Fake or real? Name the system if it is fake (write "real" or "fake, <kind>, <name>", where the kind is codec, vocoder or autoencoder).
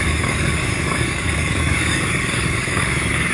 fake, codec, DAC